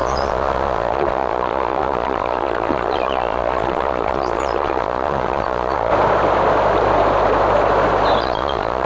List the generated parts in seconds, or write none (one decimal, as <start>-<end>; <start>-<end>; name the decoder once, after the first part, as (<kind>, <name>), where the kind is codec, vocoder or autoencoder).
0.0-5.9 (vocoder, Vocos); 8.2-8.9